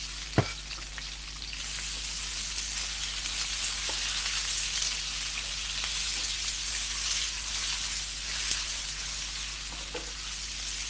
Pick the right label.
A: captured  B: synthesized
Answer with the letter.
A